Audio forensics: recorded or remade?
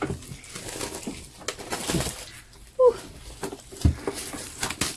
recorded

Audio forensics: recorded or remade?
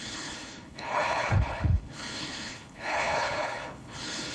remade